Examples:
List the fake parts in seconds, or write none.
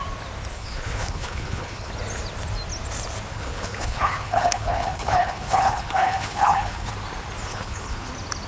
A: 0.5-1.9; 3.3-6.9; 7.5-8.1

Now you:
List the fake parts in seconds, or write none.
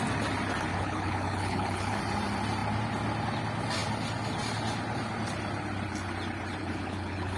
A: 0.7-2.0; 6.6-7.4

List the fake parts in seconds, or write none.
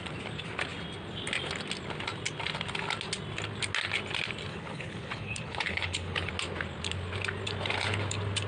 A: 4.5-6.3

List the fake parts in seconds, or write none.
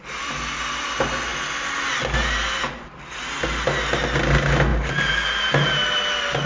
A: none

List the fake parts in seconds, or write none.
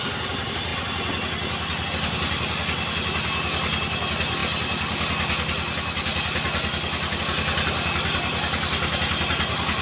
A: none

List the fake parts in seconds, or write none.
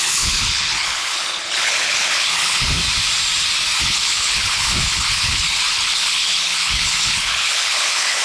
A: 0.0-2.8; 3.8-8.2